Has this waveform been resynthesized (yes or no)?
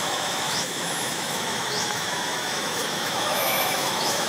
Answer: yes